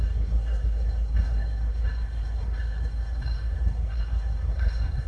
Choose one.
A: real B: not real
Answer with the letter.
B